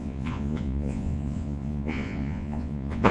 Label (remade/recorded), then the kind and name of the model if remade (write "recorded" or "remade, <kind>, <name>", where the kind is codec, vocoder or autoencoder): remade, vocoder, Vocos